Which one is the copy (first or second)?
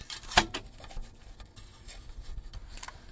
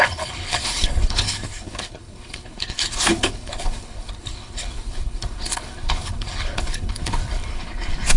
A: second